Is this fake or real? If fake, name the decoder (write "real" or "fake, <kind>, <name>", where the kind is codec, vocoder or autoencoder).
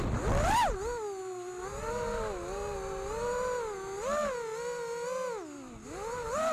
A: real